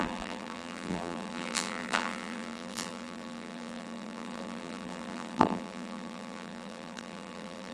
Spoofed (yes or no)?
yes